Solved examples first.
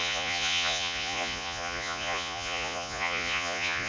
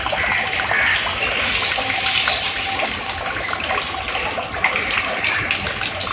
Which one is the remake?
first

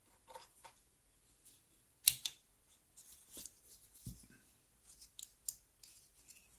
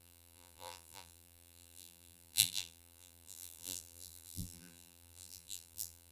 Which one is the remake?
second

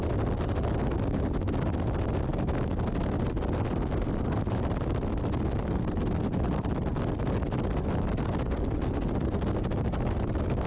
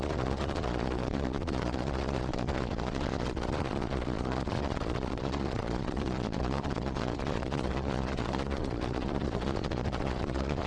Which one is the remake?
second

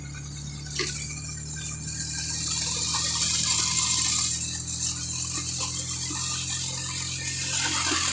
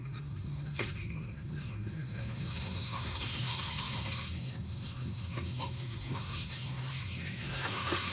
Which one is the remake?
second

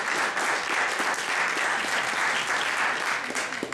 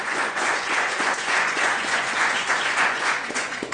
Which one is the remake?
second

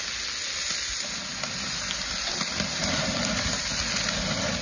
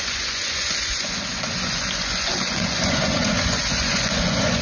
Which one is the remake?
second